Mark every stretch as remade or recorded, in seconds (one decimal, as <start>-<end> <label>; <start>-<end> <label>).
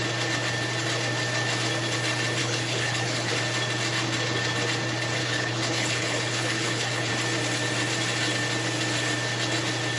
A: 0.0-2.4 recorded; 2.4-3.3 remade; 3.3-5.2 recorded; 5.2-7.1 remade; 7.1-10.0 recorded